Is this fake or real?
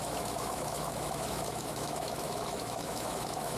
fake